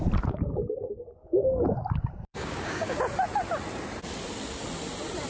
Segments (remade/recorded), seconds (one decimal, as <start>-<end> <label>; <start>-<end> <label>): 0.0-2.3 recorded; 2.3-3.0 remade; 3.0-5.3 recorded